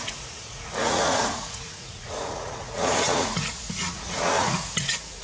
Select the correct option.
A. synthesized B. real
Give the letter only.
A